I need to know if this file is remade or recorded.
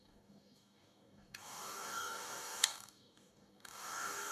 remade